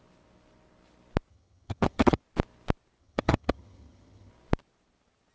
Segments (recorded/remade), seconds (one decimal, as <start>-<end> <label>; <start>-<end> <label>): 0.0-1.3 recorded; 1.3-2.2 remade; 2.2-3.0 recorded; 3.0-4.3 remade; 4.3-5.3 recorded